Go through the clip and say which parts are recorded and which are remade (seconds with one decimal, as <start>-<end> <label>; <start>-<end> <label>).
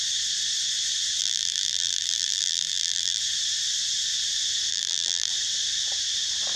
0.0-1.2 recorded; 1.2-3.2 remade; 3.2-4.7 recorded; 4.7-5.3 remade; 5.3-6.6 recorded